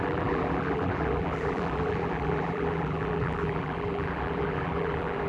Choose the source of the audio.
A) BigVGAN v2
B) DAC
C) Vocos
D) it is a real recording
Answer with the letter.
A